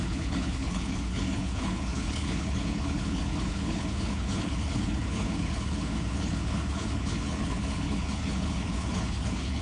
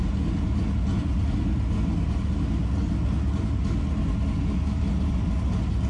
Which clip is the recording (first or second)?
second